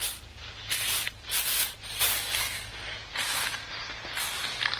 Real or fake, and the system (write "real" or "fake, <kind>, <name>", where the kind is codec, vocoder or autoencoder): real